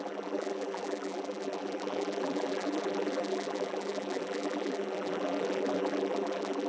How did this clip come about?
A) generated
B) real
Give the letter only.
A